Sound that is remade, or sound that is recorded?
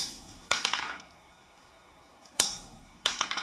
remade